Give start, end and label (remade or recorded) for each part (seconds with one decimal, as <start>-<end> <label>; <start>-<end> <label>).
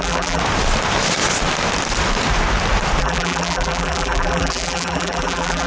0.0-0.4 remade; 0.4-3.0 recorded; 3.0-5.7 remade